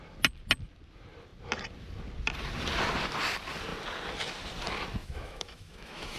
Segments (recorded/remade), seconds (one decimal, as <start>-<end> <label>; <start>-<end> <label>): 0.0-5.0 recorded; 5.0-6.2 remade